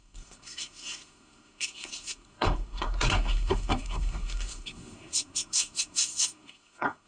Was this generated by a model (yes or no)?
yes